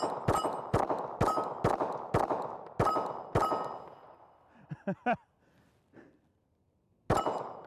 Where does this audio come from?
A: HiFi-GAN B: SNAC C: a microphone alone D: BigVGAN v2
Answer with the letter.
C